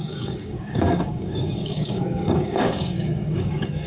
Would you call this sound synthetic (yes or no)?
yes